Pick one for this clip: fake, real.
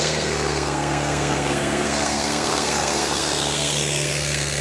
fake